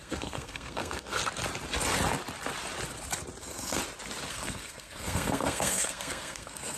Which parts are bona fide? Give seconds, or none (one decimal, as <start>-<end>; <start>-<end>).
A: 1.2-3.4; 3.8-4.3